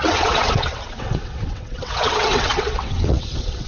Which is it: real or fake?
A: fake